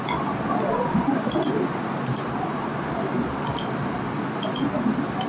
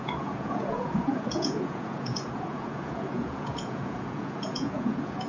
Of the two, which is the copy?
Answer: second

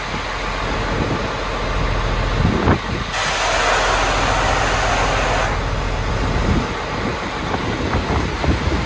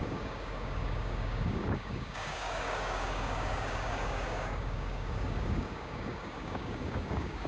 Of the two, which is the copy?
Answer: second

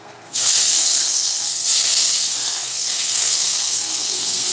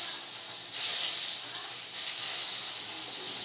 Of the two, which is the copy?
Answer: first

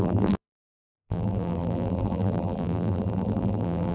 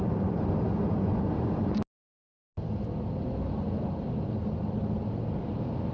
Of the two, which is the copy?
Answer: first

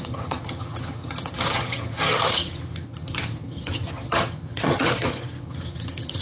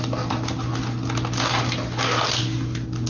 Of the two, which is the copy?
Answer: first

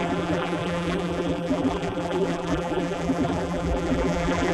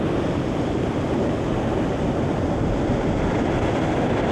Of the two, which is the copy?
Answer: first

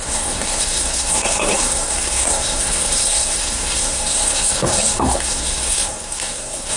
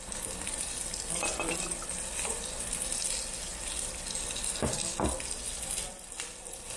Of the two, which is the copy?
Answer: first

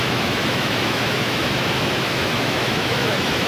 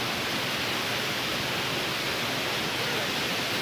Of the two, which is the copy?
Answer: first